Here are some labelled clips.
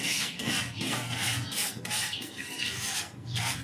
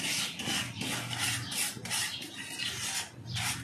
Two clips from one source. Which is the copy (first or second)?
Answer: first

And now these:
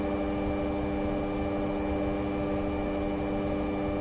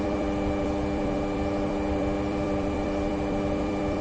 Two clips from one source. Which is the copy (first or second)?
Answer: second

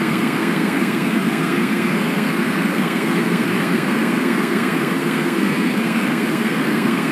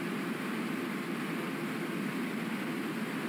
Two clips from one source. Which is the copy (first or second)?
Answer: first